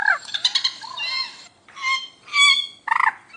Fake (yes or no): no